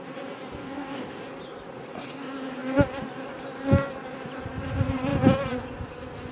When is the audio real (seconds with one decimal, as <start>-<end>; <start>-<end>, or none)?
0.0-0.6; 1.2-6.3

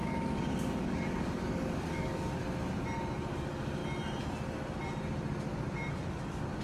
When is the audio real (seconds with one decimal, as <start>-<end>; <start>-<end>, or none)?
2.4-3.3; 3.8-5.9

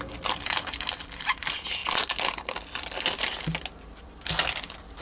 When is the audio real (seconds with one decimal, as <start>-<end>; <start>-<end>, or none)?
0.0-5.0

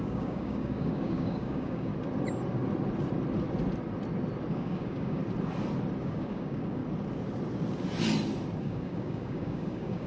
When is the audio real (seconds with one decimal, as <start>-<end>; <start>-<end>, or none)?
1.9-4.5; 5.2-6.0; 6.8-8.6

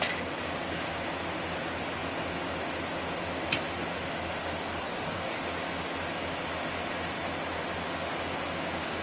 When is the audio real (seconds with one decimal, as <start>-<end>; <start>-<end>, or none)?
0.0-4.8; 5.4-9.0

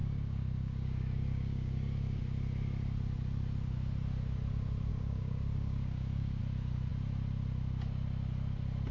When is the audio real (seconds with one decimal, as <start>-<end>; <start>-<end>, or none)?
2.2-4.9; 6.4-8.9

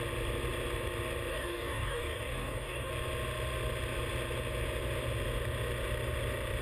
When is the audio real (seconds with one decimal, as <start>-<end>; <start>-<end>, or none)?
0.0-1.3; 2.9-6.6

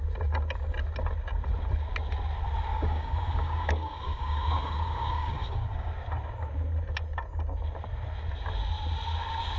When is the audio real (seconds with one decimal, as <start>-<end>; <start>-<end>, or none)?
0.0-2.7; 5.9-9.6